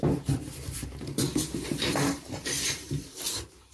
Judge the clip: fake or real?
fake